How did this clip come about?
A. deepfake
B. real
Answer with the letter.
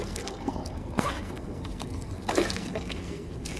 A